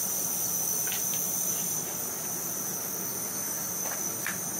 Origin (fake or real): real